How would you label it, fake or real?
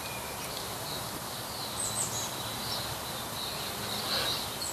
real